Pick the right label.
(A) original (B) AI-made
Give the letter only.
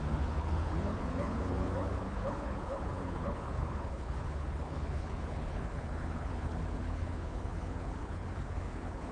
B